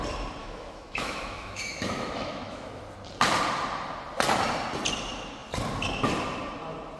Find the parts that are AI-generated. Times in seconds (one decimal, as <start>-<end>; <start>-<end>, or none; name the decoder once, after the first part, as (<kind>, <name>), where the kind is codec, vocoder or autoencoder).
0.4-2.8 (autoencoder, DAC-VAE)